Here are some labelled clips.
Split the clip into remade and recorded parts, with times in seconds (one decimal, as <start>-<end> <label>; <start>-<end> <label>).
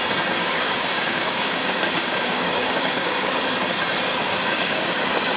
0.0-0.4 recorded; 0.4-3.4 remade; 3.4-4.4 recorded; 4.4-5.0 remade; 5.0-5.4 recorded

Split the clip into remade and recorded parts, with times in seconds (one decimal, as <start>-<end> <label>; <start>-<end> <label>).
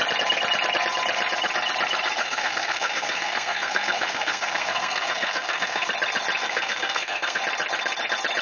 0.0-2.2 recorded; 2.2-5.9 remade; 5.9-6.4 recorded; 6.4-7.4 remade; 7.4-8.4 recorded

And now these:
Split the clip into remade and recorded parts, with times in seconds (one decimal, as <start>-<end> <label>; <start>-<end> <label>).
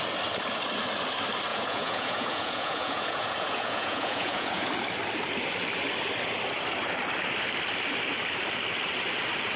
0.0-1.5 recorded; 1.5-4.7 remade; 4.7-9.6 recorded